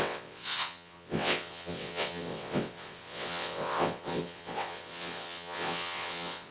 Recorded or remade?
remade